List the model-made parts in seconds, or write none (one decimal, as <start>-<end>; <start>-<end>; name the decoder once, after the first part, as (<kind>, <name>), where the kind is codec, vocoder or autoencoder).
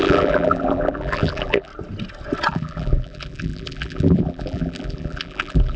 0.0-1.7 (vocoder, BigVGAN v2); 2.5-5.8